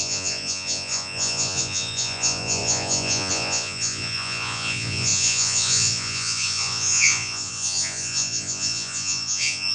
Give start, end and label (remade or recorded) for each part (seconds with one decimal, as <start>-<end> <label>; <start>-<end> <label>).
0.0-9.7 remade